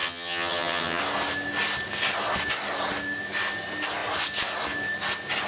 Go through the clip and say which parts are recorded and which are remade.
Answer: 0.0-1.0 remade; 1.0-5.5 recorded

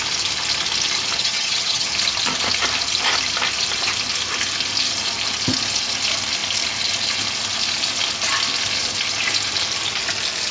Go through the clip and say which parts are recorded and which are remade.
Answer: 0.0-1.2 recorded; 1.2-1.9 remade; 1.9-10.5 recorded

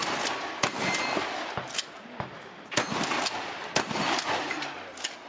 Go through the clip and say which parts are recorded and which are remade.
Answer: 0.0-5.3 recorded